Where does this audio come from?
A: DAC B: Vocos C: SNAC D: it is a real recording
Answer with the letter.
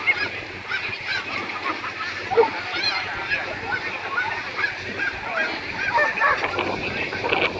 D